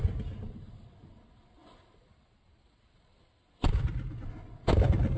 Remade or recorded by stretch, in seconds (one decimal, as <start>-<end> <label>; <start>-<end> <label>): 0.0-5.2 recorded